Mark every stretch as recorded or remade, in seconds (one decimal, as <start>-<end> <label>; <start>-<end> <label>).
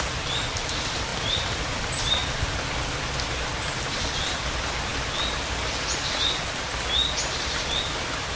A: 0.0-2.2 remade; 2.2-4.0 recorded; 4.0-4.9 remade; 4.9-7.2 recorded; 7.2-8.4 remade